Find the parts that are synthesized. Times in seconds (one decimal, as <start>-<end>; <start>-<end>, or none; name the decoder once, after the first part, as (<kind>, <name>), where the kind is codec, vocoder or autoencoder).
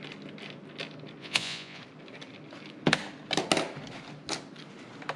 1.2-1.8 (vocoder, Vocos)